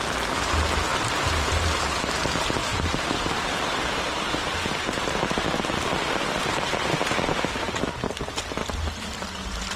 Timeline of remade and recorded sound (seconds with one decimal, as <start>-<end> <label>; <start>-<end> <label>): 0.0-0.9 recorded; 0.9-1.8 remade; 1.8-9.8 recorded